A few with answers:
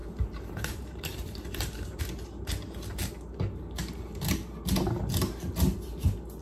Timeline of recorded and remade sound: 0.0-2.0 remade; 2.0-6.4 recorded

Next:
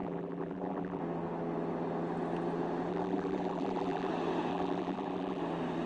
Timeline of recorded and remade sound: 0.0-1.0 remade; 1.0-2.9 recorded; 2.9-4.1 remade; 4.1-4.5 recorded; 4.5-5.4 remade; 5.4-5.9 recorded